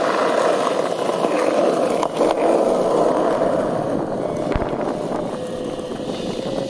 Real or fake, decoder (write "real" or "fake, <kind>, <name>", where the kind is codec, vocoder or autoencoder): real